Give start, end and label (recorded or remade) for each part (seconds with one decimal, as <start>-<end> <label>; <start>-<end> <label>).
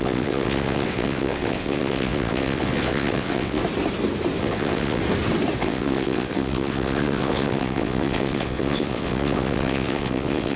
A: 0.0-3.6 remade; 3.6-4.4 recorded; 4.4-5.0 remade; 5.0-5.6 recorded; 5.6-10.6 remade